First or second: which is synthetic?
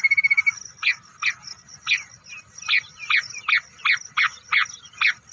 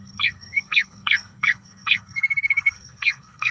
second